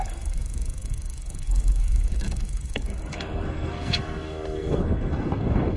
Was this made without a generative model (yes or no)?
no